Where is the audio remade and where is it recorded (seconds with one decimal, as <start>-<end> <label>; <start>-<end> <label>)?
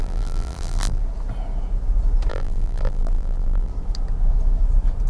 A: 0.0-1.0 remade; 1.0-2.3 recorded; 2.3-3.7 remade; 3.7-5.1 recorded